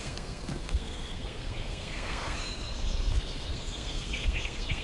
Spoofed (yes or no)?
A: yes